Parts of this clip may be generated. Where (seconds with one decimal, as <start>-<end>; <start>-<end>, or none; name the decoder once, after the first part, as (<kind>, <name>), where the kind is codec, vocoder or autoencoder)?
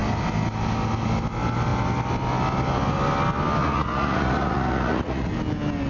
3.6-5.3 (vocoder, Vocos)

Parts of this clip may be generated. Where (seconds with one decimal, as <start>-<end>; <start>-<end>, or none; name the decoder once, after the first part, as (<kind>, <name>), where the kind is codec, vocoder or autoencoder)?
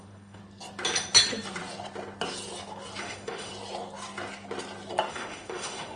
0.0-0.4 (autoencoder, DAC-VAE); 3.0-3.5; 5.1-6.0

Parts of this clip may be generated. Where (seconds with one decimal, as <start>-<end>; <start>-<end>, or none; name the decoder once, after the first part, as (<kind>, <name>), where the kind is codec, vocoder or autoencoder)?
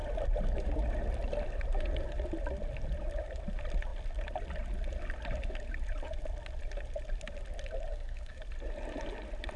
7.9-8.4 (codec, DAC)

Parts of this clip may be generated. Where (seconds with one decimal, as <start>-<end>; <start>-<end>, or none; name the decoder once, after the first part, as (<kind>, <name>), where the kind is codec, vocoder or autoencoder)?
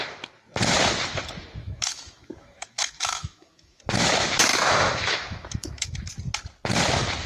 1.6-3.8 (autoencoder, DAC-VAE); 4.5-6.1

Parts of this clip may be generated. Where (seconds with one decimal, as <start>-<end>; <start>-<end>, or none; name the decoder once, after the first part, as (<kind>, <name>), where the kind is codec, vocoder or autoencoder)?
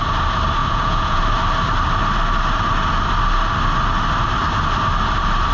0.6-1.2 (vocoder, Vocos)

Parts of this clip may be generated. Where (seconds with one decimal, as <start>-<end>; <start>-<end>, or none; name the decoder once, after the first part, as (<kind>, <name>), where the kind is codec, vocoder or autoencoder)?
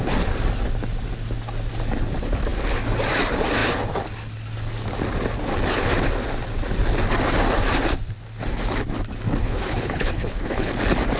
9.4-10.7 (codec, HILCodec)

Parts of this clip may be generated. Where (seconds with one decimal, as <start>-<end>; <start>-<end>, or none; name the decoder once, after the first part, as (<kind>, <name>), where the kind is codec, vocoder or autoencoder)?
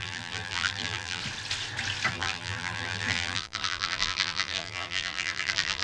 0.0-1.2 (vocoder, BigVGAN v2); 2.1-5.8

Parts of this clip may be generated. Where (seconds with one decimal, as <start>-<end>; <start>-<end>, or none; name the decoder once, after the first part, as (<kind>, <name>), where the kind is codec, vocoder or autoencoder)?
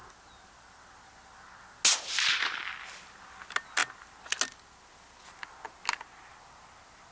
none